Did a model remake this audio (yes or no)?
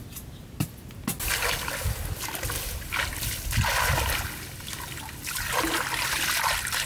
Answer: no